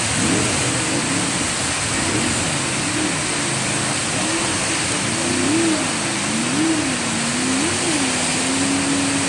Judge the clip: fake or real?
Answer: real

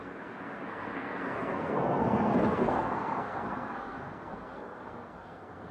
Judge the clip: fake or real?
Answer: fake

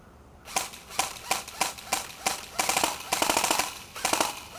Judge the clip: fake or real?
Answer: real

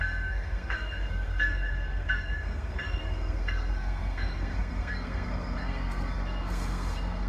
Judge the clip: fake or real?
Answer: fake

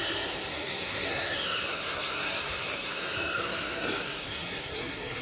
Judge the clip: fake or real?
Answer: fake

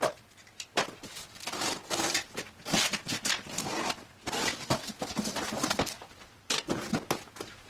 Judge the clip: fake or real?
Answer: real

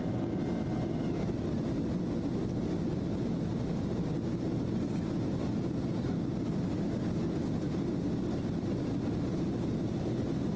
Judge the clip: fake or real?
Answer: real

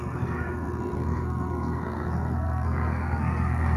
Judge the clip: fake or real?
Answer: fake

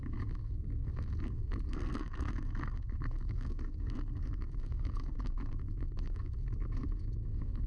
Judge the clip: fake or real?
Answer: fake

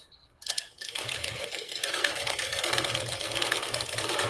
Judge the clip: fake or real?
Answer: fake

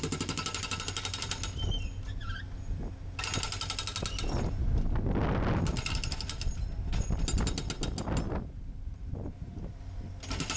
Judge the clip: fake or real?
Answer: real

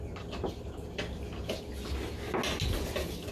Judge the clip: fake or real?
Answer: real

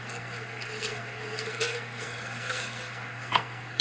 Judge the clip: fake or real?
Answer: fake